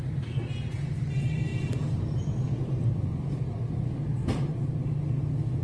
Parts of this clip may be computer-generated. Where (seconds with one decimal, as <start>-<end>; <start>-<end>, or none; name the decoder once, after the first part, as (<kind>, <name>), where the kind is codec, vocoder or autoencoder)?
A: none

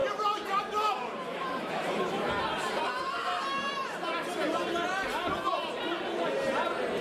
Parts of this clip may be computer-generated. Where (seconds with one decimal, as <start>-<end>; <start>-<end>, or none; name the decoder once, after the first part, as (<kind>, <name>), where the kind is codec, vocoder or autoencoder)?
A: 0.0-0.6 (vocoder, BigVGAN v2); 1.3-2.8

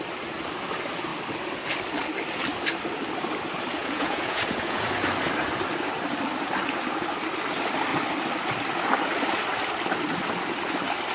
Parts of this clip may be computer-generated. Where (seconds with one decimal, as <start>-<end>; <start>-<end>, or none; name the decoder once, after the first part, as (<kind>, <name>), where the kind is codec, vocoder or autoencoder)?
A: 3.8-4.9 (vocoder, Vocos)

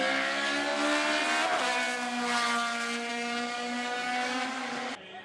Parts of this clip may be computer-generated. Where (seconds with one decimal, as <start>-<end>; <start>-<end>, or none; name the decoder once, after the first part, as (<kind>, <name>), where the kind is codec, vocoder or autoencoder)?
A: 0.0-0.7 (codec, DAC); 3.1-4.4

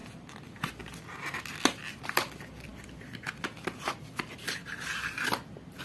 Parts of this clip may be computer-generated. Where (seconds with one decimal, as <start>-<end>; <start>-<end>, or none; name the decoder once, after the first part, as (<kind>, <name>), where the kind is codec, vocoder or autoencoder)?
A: none

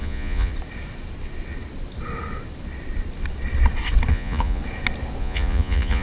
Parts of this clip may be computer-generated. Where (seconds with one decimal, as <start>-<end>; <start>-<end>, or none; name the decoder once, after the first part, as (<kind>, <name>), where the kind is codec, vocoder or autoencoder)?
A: 0.0-0.5 (vocoder, Vocos); 4.1-4.6; 5.2-6.0

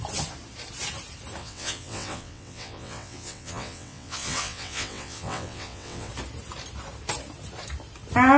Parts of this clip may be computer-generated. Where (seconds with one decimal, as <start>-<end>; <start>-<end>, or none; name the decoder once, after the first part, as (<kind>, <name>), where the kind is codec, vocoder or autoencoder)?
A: 1.4-6.1 (vocoder, WaveNeXt)